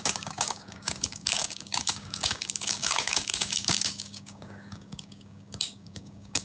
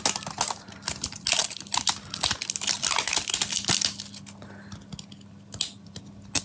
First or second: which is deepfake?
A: first